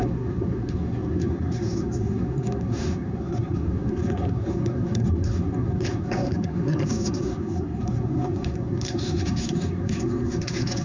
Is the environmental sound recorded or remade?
remade